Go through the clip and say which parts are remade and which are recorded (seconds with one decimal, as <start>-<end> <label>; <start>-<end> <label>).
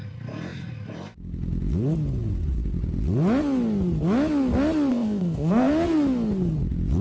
0.0-4.9 recorded; 4.9-5.7 remade; 5.7-7.0 recorded